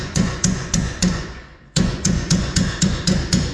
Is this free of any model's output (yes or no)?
no